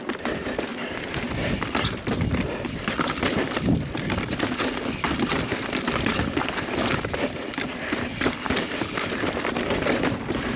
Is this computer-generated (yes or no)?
yes